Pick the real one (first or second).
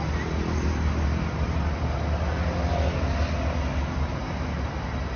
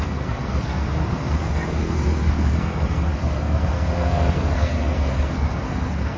first